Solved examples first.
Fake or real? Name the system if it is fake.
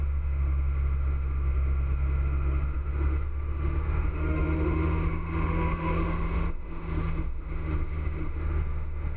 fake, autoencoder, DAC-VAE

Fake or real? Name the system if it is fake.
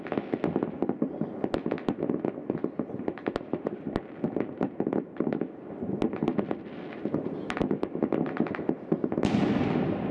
real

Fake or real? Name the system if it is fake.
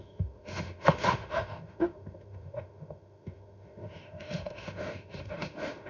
fake, autoencoder, DAC-VAE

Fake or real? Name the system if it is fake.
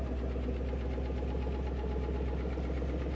real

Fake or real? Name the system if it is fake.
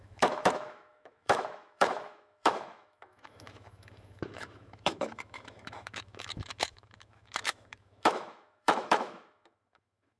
fake, autoencoder, DAC-VAE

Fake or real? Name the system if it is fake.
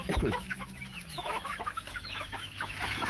fake, autoencoder, DAC-VAE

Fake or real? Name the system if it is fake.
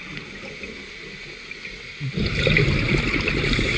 real